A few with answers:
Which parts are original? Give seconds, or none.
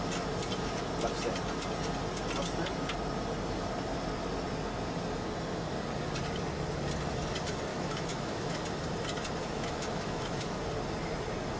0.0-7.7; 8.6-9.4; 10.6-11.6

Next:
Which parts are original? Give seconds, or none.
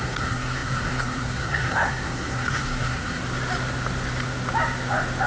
3.2-5.3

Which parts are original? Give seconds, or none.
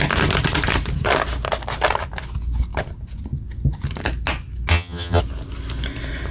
0.0-4.7; 5.2-6.3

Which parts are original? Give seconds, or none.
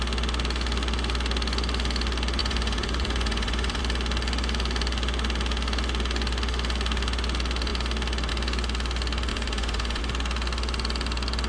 0.0-2.4; 3.8-9.3; 10.0-11.5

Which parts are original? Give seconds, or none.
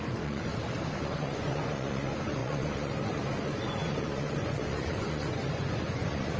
0.5-1.0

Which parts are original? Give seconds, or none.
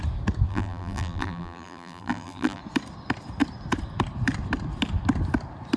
0.0-0.5; 2.6-5.8